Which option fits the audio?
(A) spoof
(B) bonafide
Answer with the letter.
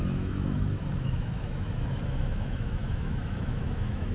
A